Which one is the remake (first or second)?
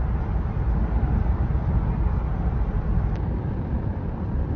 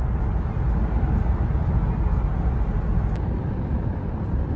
first